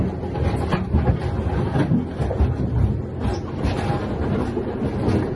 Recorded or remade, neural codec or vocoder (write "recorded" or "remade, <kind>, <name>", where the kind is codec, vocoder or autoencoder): recorded